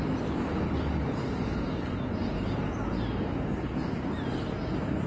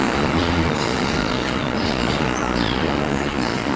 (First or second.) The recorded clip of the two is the first